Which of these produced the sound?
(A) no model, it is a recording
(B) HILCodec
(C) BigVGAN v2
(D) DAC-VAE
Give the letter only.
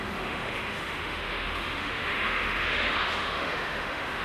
D